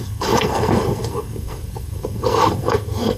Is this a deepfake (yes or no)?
yes